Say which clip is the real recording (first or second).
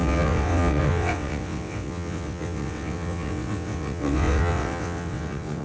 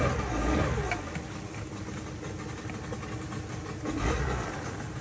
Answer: second